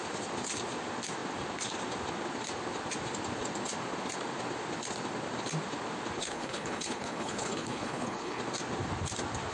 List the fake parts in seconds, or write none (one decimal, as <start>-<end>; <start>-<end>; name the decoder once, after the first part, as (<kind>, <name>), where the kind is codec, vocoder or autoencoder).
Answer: 6.2-8.4 (codec, HILCodec)